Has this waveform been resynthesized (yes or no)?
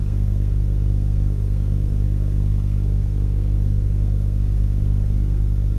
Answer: yes